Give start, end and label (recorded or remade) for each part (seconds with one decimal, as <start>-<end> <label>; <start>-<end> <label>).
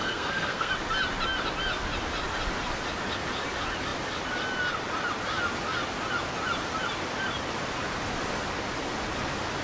0.0-0.7 remade; 0.7-9.6 recorded